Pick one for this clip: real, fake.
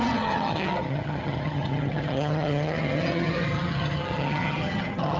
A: fake